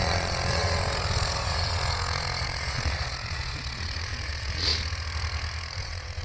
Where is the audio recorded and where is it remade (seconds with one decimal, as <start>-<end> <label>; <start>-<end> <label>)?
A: 0.0-4.7 remade; 4.7-5.8 recorded; 5.8-6.2 remade